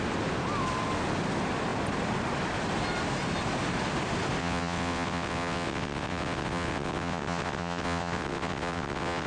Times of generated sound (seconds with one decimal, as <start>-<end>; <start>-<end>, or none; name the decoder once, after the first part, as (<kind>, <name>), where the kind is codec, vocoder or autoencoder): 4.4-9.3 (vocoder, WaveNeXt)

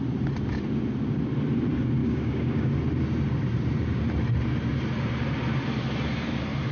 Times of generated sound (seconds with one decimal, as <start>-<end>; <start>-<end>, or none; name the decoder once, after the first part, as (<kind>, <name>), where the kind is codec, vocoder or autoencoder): 2.0-2.7 (codec, DAC)

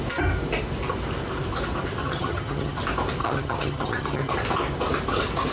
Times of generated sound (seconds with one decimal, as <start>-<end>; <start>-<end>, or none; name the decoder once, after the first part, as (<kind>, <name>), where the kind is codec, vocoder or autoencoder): 2.0-2.8 (vocoder, HiFi-GAN); 3.2-4.3

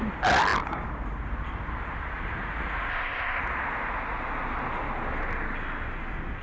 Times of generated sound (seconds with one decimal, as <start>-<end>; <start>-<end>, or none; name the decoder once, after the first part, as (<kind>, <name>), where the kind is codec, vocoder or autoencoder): 2.9-3.4 (codec, ZipCodec)

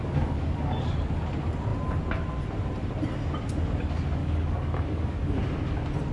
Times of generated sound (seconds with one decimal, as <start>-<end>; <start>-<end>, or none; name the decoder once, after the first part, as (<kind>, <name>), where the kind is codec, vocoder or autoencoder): 0.0-1.2 (codec, DAC); 4.2-5.4

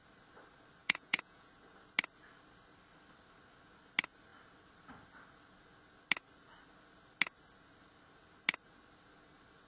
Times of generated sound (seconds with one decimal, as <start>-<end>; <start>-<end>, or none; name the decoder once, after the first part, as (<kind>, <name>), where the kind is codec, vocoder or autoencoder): 0.8-1.5 (vocoder, Vocos)